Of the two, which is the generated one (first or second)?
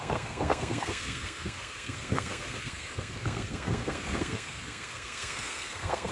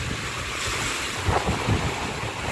first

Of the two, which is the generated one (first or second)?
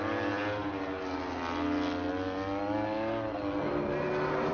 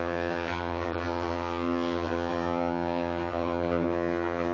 second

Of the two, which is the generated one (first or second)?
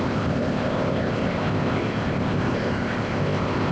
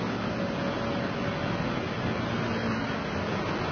first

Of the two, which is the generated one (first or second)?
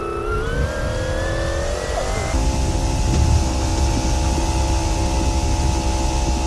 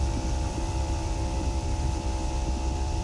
second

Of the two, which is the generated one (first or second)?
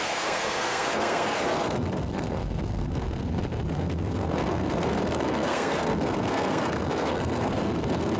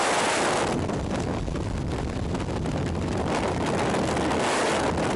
first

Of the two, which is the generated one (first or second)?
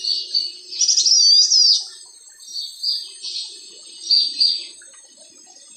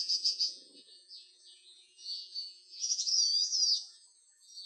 second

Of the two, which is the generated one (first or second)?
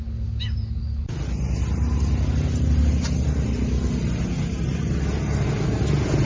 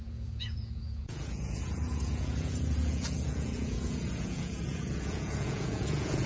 second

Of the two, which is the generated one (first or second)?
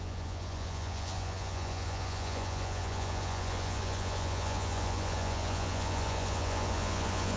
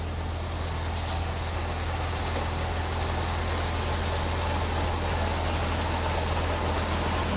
first